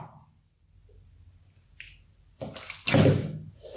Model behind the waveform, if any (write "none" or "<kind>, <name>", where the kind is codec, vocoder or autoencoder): none